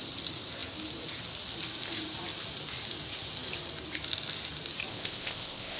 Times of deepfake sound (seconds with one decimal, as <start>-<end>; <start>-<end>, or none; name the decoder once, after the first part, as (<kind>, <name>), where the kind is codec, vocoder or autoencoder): 4.9-5.8 (codec, ZipCodec)